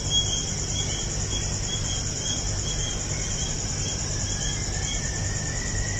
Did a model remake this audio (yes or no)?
no